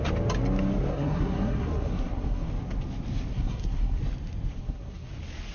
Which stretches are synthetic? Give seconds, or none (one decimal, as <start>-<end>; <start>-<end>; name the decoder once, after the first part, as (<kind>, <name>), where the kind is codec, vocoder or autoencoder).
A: 0.9-2.5 (codec, SNAC); 3.3-4.0; 4.6-5.1